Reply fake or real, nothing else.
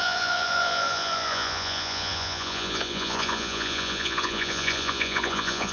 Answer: fake